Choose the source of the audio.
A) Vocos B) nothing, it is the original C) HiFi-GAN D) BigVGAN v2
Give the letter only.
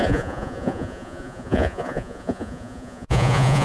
A